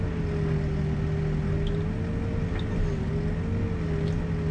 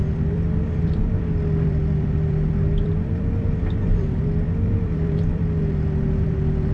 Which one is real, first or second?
first